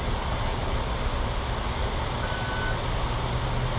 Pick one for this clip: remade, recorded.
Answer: recorded